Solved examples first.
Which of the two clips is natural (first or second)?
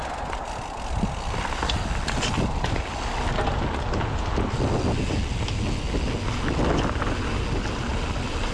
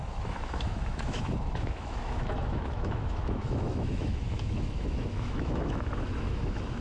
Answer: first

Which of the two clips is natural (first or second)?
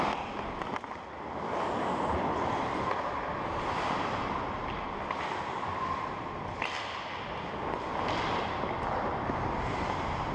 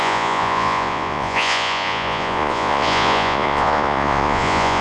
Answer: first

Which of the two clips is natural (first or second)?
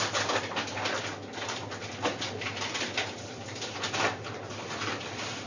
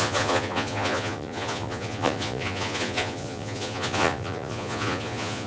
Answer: first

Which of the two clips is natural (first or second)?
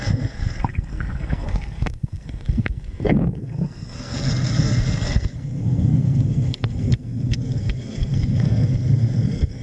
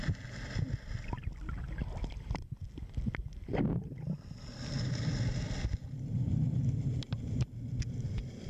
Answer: second